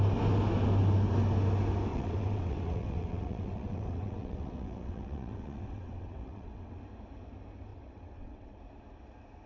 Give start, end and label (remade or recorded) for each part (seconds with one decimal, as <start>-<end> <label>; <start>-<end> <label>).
0.0-1.9 recorded; 1.9-6.8 remade; 6.8-7.7 recorded; 7.7-8.6 remade; 8.6-9.5 recorded